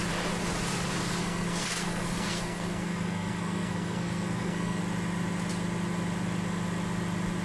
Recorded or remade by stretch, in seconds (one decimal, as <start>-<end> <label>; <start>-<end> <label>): 0.0-1.2 recorded; 1.2-4.8 remade; 4.8-7.4 recorded